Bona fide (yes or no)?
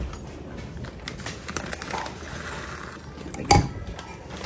yes